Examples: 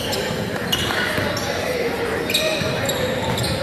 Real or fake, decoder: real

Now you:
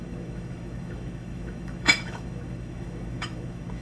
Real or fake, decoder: fake, autoencoder, DAC-VAE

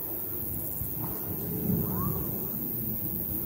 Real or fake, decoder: real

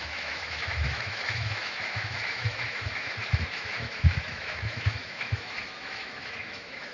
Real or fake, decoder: fake, autoencoder, DAC-VAE